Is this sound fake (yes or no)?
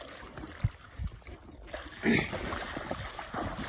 no